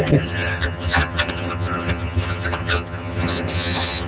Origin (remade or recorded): remade